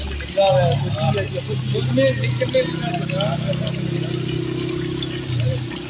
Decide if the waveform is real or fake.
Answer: real